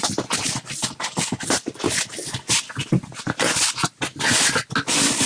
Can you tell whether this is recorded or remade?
recorded